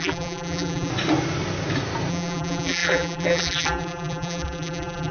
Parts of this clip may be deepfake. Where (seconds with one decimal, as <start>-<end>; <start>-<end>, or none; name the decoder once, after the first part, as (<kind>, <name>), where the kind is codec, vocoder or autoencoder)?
0.0-0.9 (vocoder, BigVGAN v2); 2.1-5.1